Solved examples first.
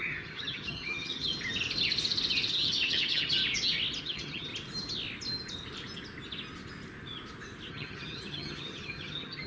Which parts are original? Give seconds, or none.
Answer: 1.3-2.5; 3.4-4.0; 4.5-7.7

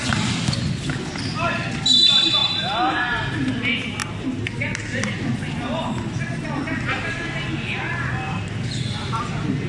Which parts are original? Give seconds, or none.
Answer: 0.0-9.7

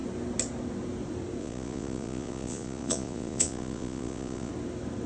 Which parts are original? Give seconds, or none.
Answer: 0.0-1.4; 4.5-5.1